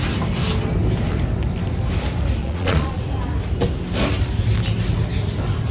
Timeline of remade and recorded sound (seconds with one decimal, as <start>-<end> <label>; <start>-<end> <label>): 0.0-2.4 recorded; 2.4-3.0 remade; 3.0-5.7 recorded